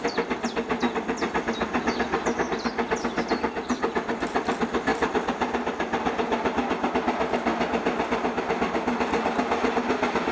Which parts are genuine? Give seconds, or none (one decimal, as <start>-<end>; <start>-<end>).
0.0-10.3